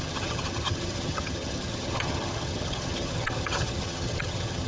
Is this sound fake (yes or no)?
yes